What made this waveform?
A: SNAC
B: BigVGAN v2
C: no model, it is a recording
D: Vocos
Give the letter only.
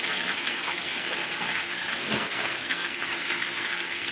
A